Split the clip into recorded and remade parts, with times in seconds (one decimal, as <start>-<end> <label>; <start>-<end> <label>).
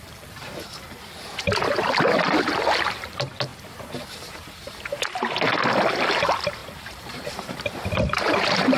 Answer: 0.0-0.5 remade; 0.5-2.8 recorded; 2.8-3.5 remade; 3.5-6.1 recorded; 6.1-8.8 remade